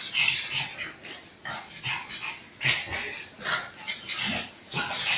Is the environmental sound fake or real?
real